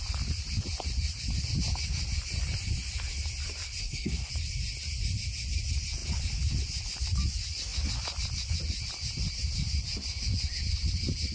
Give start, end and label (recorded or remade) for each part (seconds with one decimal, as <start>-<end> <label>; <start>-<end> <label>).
0.0-3.8 recorded; 3.8-4.3 remade; 4.3-11.3 recorded